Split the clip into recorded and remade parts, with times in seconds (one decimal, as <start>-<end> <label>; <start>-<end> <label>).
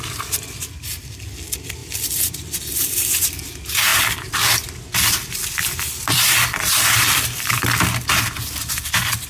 0.0-1.8 recorded; 1.8-2.6 remade; 2.6-3.9 recorded; 3.9-8.7 remade; 8.7-9.3 recorded